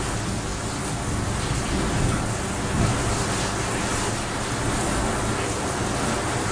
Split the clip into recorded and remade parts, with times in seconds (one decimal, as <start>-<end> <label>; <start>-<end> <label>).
0.0-6.5 recorded